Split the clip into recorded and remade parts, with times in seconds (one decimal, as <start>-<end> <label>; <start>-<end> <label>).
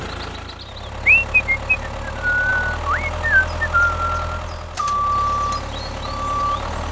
0.0-6.9 recorded